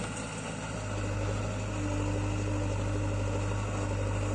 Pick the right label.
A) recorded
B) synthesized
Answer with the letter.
A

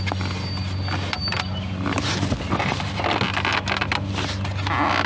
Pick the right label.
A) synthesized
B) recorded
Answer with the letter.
B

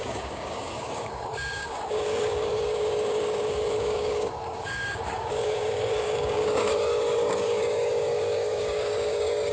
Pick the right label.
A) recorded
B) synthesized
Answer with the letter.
B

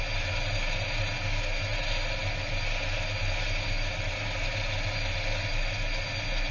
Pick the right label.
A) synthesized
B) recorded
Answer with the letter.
B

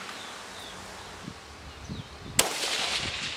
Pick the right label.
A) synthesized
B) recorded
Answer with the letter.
B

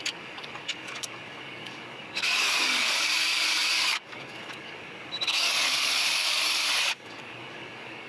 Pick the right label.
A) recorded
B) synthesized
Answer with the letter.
B